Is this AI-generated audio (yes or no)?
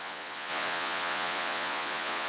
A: yes